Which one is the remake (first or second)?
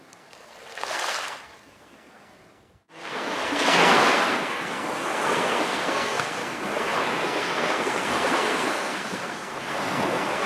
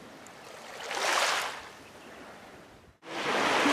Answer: first